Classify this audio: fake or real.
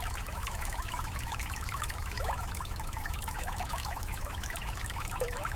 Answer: fake